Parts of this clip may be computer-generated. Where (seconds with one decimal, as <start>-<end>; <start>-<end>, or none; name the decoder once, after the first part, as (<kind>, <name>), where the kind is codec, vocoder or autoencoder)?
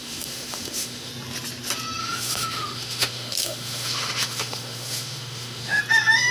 0.0-1.1 (autoencoder, DAC-VAE); 2.0-5.8